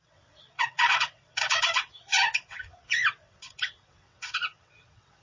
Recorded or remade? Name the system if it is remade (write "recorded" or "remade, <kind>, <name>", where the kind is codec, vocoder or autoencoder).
remade, vocoder, WaveNeXt